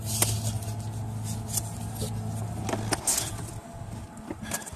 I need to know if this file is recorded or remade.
recorded